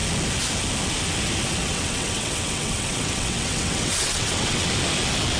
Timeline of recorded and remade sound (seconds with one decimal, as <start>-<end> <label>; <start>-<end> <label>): 0.0-1.6 recorded; 1.6-4.7 remade; 4.7-5.4 recorded